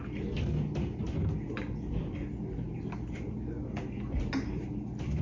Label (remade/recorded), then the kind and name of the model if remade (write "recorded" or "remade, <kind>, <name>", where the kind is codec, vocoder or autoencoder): recorded